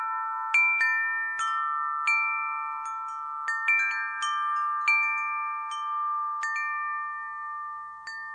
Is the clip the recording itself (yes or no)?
yes